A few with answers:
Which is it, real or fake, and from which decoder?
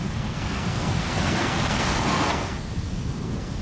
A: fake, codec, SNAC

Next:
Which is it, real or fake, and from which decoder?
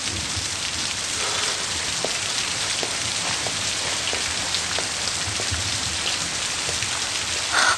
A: real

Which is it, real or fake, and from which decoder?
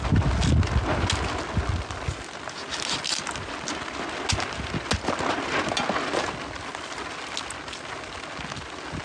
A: real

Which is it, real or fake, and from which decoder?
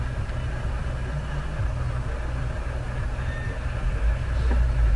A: real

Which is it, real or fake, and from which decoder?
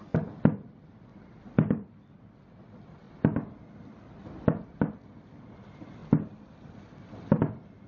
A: real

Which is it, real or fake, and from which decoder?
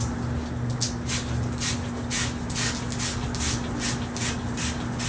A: real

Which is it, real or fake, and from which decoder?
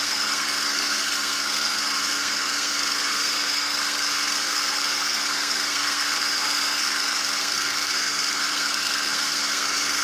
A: fake, codec, SNAC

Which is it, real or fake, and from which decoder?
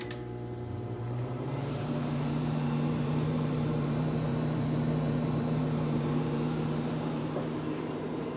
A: fake, vocoder, BigVGAN v2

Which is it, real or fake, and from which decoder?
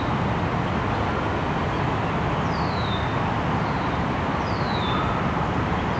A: real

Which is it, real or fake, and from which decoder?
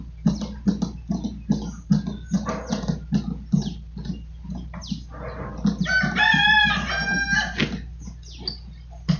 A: real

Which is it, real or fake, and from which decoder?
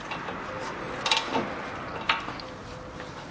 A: real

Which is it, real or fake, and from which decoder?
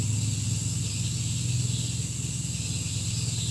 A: real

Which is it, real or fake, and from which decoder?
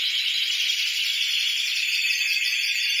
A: fake, vocoder, BigVGAN v2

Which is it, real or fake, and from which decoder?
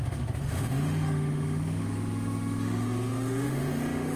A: fake, autoencoder, DAC-VAE